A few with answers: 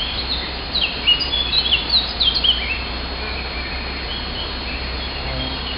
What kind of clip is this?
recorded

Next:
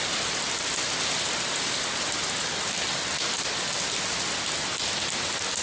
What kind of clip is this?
recorded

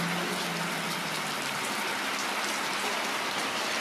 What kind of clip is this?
recorded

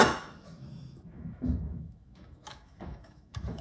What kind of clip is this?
remade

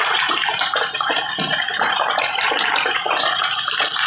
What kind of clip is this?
remade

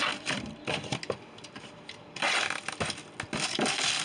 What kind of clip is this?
recorded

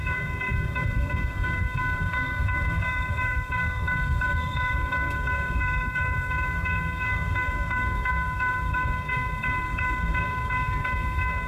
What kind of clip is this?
remade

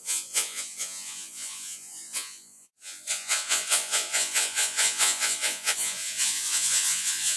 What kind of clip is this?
remade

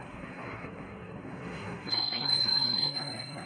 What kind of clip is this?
remade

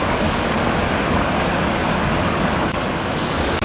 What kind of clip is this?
remade